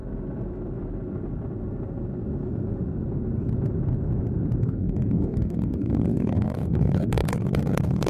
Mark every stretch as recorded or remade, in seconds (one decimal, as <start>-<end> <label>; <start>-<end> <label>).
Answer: 0.0-4.6 recorded; 4.6-8.1 remade